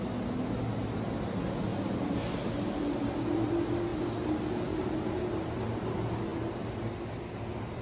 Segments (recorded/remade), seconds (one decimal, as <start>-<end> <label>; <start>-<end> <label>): 0.0-1.7 recorded; 1.7-3.5 remade; 3.5-7.8 recorded